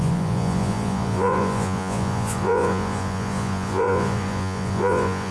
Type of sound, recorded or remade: remade